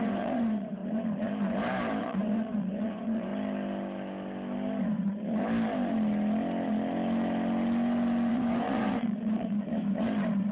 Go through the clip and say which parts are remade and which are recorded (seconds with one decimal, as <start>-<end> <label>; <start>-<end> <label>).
0.0-0.8 remade; 0.8-2.0 recorded; 2.0-3.3 remade; 3.3-8.3 recorded; 8.3-9.7 remade; 9.7-10.5 recorded